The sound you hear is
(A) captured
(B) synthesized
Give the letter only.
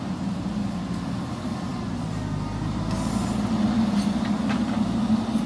A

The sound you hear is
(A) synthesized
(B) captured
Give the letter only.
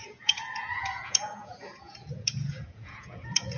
A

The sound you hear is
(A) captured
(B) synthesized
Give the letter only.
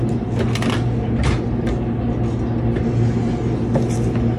A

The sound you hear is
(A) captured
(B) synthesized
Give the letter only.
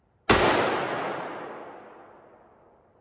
A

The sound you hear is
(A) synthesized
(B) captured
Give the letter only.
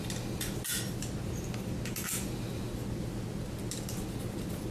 B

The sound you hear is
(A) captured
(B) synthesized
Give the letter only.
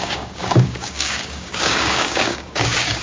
B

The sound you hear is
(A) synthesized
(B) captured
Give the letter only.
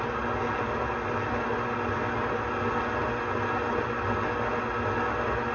B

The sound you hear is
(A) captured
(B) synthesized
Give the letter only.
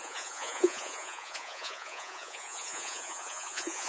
B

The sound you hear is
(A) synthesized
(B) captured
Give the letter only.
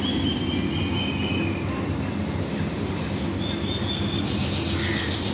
B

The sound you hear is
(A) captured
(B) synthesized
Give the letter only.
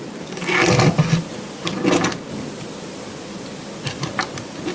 A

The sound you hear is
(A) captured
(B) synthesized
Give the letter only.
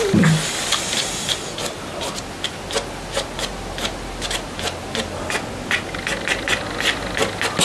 A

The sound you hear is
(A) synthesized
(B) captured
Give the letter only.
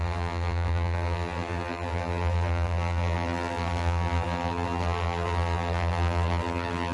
A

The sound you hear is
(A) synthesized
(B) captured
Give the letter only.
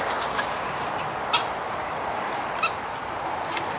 B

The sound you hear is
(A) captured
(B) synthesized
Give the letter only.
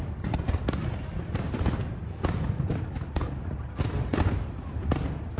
A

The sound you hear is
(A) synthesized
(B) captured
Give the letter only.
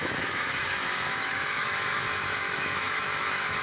A